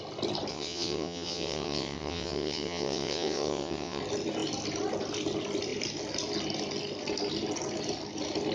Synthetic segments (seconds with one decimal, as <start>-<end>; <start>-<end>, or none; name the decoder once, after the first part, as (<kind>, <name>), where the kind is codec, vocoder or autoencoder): 0.5-4.0 (vocoder, WaveNeXt)